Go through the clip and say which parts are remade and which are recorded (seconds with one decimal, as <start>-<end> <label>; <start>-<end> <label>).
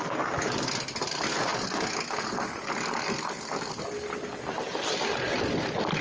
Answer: 0.0-6.0 recorded